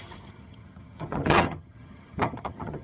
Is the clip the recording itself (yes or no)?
no